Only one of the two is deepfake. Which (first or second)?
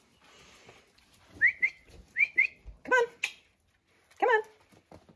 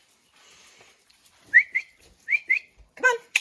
second